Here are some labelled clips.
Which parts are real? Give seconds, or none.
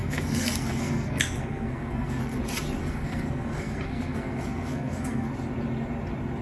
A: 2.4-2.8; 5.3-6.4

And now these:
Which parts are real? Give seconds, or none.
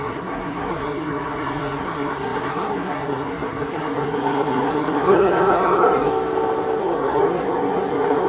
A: 6.1-6.8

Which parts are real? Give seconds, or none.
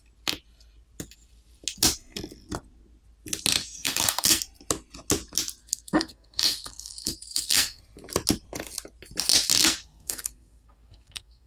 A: 0.0-3.6; 4.4-5.6; 7.8-9.6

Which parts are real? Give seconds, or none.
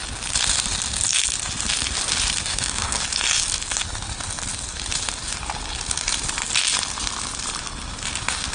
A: 0.0-2.5; 3.0-8.5